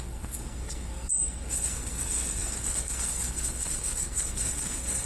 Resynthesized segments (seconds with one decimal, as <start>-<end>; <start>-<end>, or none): 0.0-5.1